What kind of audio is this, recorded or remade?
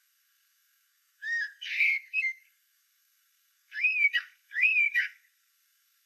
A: remade